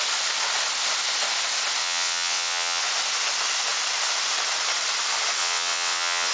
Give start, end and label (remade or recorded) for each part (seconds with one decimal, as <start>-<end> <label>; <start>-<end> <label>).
0.0-1.8 recorded; 1.8-2.8 remade; 2.8-5.4 recorded; 5.4-6.3 remade